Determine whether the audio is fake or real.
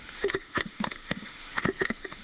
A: fake